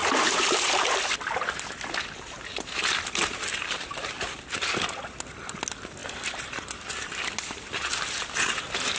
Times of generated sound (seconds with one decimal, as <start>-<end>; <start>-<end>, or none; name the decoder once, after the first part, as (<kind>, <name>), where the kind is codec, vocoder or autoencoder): 6.0-8.0 (vocoder, BigVGAN v2)